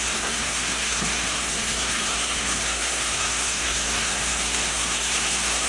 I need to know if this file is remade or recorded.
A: remade